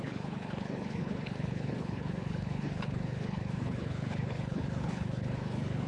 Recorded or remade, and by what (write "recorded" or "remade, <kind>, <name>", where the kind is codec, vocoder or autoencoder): remade, codec, HILCodec